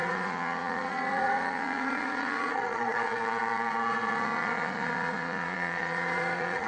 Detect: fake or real fake